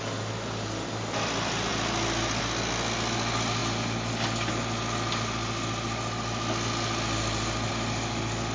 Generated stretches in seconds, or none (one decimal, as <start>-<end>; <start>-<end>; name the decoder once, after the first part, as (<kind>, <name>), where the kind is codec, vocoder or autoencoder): none